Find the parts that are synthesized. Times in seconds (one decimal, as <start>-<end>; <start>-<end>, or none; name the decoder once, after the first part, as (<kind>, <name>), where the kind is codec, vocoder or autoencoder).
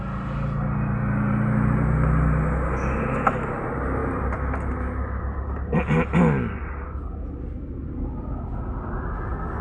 none